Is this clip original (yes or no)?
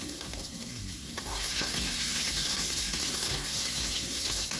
no